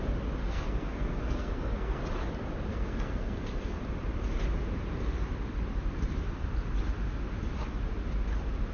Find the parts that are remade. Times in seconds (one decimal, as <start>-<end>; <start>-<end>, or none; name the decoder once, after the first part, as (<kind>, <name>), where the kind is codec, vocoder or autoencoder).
0.4-2.0 (codec, SNAC); 2.7-3.8